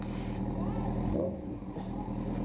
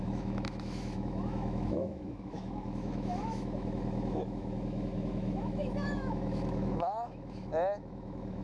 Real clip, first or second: first